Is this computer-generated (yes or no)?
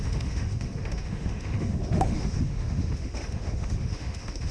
yes